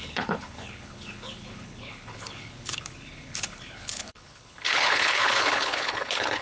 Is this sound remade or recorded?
remade